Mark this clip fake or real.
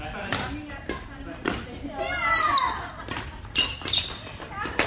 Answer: real